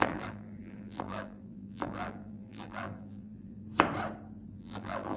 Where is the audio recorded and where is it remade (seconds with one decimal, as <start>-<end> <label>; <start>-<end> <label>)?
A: 0.0-3.6 remade; 3.6-4.5 recorded; 4.5-5.2 remade